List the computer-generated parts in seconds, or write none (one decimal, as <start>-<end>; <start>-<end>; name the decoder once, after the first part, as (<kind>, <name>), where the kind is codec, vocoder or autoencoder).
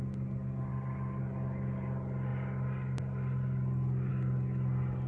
none